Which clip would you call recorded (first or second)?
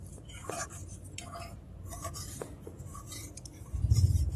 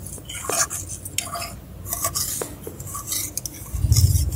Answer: second